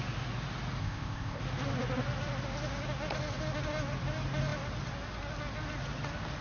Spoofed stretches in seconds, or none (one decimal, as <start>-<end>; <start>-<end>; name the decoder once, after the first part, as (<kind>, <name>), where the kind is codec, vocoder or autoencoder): 0.8-1.4 (codec, ZipCodec)